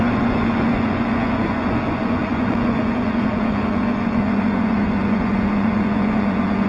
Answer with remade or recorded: remade